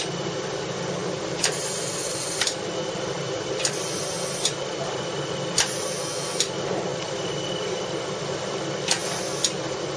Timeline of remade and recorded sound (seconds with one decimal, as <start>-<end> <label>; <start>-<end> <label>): 0.0-1.0 recorded; 1.0-5.1 remade; 5.1-6.9 recorded; 6.9-7.5 remade; 7.5-10.0 recorded